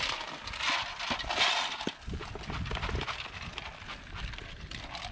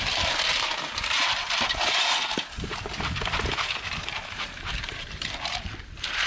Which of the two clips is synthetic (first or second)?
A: second